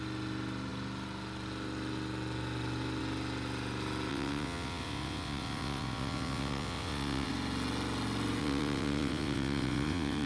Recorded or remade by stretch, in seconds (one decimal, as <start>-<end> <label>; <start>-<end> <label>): 0.0-4.1 recorded; 4.1-7.3 remade; 7.3-8.4 recorded; 8.4-10.3 remade